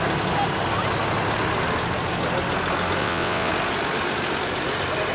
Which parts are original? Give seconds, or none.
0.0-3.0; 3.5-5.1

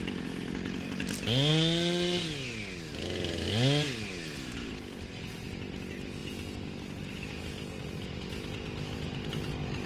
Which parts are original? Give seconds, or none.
0.0-6.2; 9.3-9.9

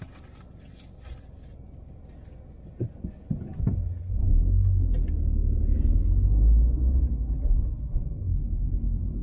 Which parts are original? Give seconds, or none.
0.0-9.2

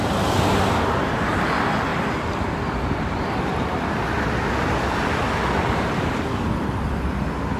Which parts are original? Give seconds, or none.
0.0-7.6

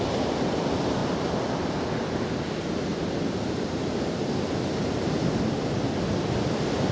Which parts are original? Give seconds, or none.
0.0-6.9

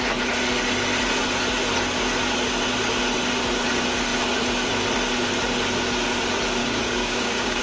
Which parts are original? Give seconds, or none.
0.0-6.6

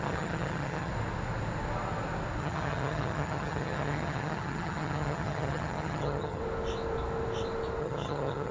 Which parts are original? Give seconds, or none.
0.9-2.4; 6.4-7.8

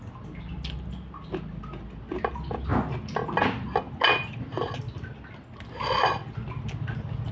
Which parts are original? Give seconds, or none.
0.0-7.3